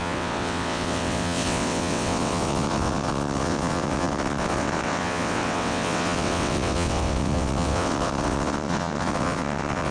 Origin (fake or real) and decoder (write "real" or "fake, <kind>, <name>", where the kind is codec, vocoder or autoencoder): fake, vocoder, WaveNeXt